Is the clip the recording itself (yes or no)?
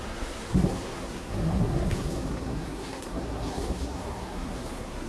no